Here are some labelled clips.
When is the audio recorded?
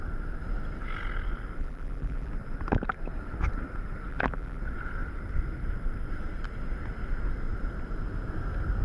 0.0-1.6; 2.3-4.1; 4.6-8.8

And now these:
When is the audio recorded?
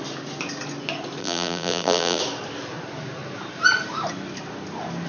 0.0-1.2; 2.2-5.1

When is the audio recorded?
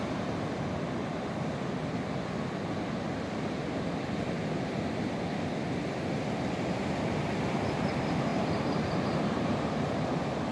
0.0-8.3; 10.1-10.5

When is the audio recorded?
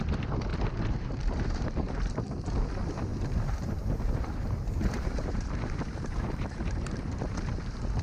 0.0-0.5; 2.2-3.1; 7.0-8.0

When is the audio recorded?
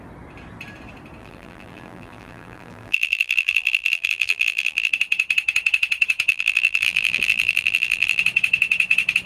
0.0-1.2; 4.9-6.3; 8.2-9.3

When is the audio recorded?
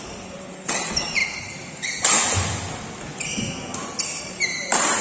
1.2-4.2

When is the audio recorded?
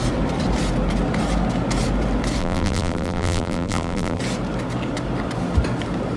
0.0-2.4; 4.2-6.2